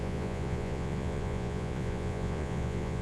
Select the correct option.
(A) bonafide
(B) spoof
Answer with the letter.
B